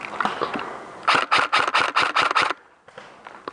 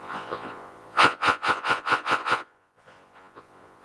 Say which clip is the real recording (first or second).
first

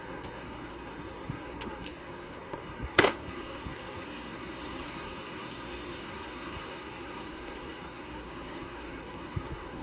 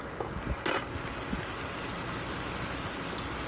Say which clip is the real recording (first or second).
second